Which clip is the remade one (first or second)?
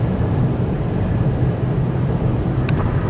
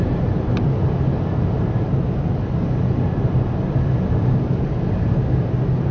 first